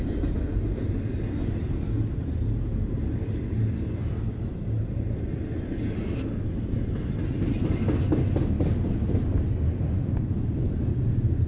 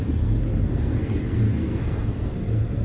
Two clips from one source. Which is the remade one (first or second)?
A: second